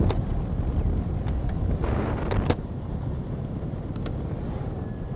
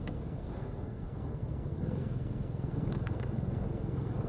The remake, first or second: second